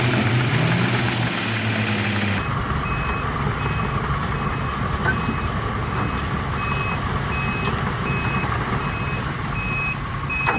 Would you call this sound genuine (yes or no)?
yes